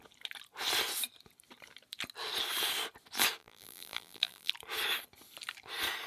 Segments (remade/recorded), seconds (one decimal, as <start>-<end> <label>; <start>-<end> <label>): 0.0-3.4 recorded; 3.4-4.5 remade; 4.5-6.1 recorded